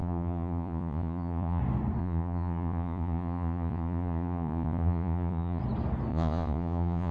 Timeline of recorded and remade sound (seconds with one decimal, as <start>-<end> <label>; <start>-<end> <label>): 0.0-1.6 remade; 1.6-2.0 recorded; 2.0-5.6 remade; 5.6-6.1 recorded; 6.1-7.1 remade